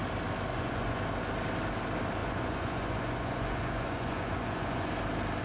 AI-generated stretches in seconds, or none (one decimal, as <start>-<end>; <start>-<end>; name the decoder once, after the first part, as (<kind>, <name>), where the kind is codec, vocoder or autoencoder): 0.5-1.0 (vocoder, Vocos); 2.2-4.9